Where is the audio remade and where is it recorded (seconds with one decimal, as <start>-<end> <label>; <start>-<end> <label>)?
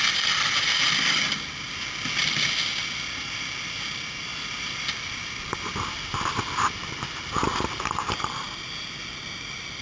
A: 0.0-4.3 recorded; 4.3-8.3 remade; 8.3-9.8 recorded